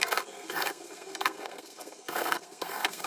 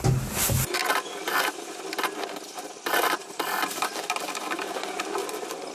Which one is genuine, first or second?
second